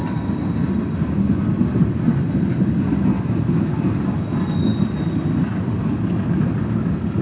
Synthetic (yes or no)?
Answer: no